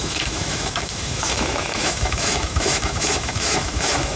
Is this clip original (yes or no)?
no